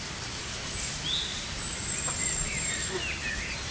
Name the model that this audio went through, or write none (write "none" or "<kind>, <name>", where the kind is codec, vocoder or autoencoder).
none